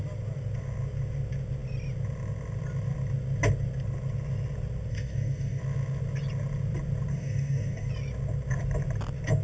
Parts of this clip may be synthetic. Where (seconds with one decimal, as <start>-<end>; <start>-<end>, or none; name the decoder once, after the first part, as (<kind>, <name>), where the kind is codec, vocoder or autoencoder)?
4.9-5.6 (codec, DAC); 7.1-7.9